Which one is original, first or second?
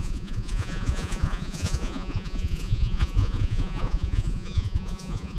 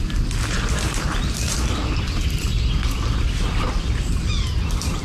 second